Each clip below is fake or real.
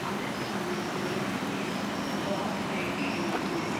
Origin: real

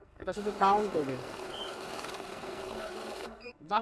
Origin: fake